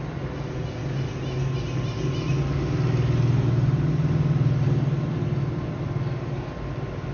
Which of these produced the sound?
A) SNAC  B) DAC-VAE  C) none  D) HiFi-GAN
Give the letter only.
C